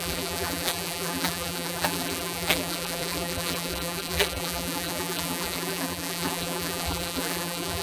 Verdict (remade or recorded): remade